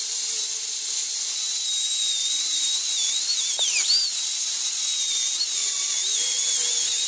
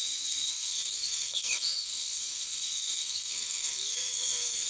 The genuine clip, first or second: first